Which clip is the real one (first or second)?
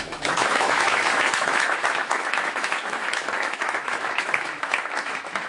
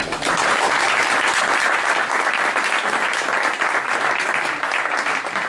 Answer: second